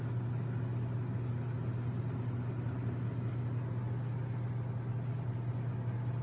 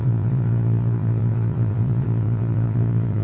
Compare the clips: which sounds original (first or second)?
first